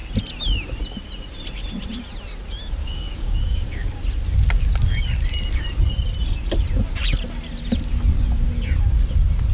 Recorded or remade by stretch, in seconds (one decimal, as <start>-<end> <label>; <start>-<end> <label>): 0.0-2.8 recorded; 2.8-4.0 remade; 4.0-9.5 recorded

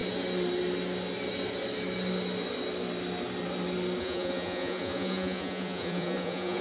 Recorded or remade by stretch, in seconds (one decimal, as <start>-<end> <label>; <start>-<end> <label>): 0.0-4.0 recorded; 4.0-6.6 remade

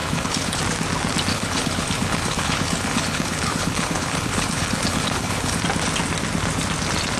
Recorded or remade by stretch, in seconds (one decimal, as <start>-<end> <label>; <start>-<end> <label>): 0.0-0.6 remade; 0.6-1.3 recorded; 1.3-5.6 remade; 5.6-7.2 recorded